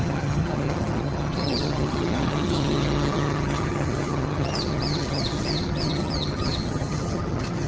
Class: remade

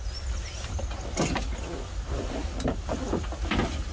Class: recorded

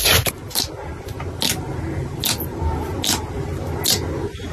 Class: recorded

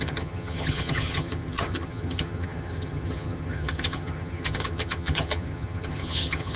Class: remade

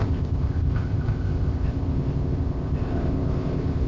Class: remade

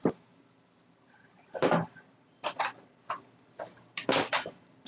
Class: remade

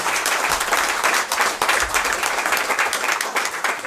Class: remade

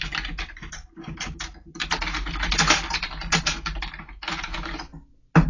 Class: recorded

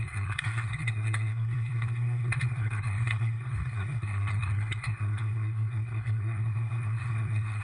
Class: remade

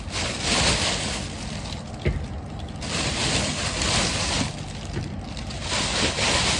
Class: recorded